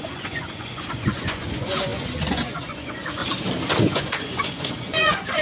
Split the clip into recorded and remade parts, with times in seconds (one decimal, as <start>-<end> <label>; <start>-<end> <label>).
0.0-3.2 remade; 3.2-3.8 recorded; 3.8-5.4 remade

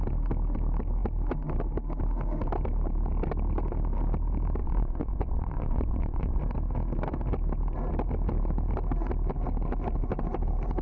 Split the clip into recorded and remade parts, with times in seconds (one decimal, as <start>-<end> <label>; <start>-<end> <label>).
0.0-4.6 recorded; 4.6-6.4 remade; 6.4-10.8 recorded

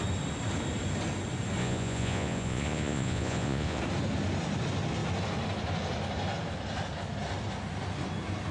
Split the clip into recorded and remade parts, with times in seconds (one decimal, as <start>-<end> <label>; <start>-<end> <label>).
0.0-1.6 recorded; 1.6-3.8 remade; 3.8-8.5 recorded

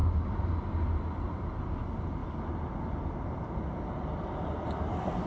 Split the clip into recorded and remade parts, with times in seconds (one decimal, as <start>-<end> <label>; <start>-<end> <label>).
0.0-5.3 recorded

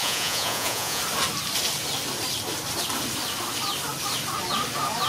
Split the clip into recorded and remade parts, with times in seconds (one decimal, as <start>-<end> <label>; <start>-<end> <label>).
0.0-1.0 remade; 1.0-5.1 recorded

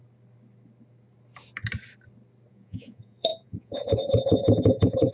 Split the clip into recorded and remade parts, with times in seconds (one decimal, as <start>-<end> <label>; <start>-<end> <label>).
0.0-2.5 recorded; 2.5-5.1 remade